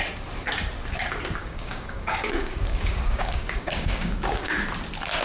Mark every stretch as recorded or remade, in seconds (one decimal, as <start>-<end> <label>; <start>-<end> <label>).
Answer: 0.0-1.4 recorded; 1.4-4.5 remade; 4.5-5.2 recorded